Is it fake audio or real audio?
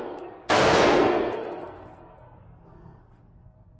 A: fake